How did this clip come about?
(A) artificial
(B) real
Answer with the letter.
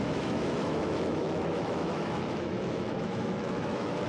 A